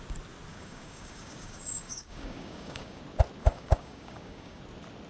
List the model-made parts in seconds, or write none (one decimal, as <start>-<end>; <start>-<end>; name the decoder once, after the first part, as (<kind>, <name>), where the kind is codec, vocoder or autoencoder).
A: 0.5-3.0 (codec, DAC); 3.4-4.6